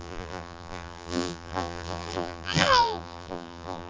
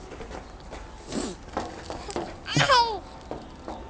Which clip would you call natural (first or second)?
second